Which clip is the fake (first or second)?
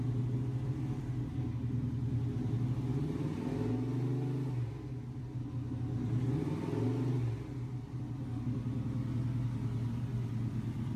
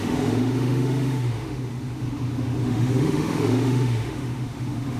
second